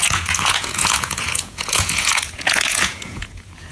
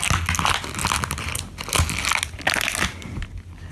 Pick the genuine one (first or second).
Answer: second